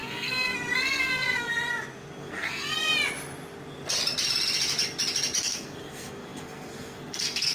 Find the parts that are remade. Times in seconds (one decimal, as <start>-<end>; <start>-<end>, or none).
0.0-1.5; 2.2-2.9; 5.4-7.5